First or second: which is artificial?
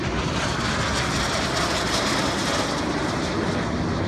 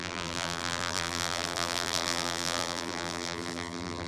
second